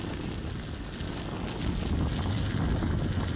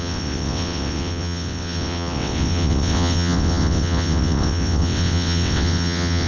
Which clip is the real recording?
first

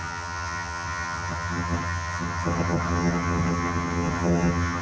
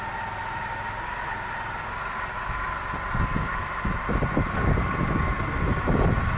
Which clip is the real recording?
second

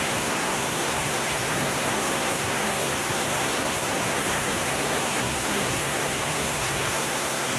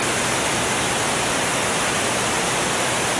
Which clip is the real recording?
second